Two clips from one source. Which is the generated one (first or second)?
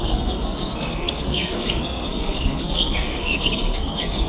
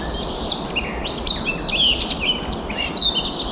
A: first